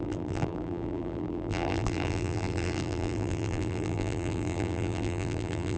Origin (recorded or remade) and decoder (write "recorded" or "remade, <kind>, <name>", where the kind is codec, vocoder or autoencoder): remade, vocoder, BigVGAN v2